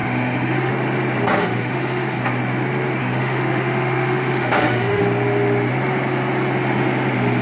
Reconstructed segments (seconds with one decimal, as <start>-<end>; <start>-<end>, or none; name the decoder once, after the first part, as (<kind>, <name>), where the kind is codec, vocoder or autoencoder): 0.0-0.7 (autoencoder, DAC-VAE); 1.4-2.2; 3.0-5.0